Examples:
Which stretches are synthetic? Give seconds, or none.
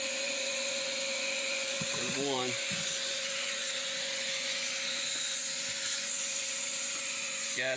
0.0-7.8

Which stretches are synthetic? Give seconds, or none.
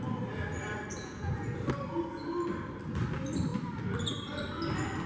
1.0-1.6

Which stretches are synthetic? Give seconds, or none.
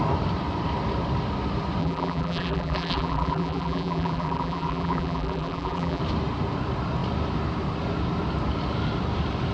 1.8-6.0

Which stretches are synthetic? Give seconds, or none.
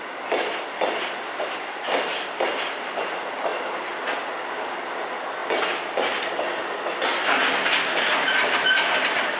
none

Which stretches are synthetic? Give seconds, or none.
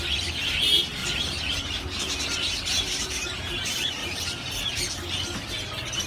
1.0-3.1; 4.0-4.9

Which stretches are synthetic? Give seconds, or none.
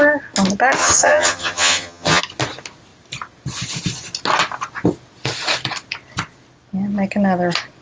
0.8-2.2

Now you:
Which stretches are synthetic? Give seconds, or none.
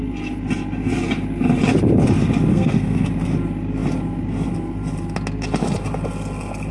2.5-3.1